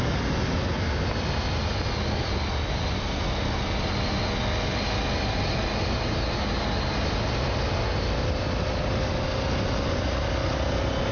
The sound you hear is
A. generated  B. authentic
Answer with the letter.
B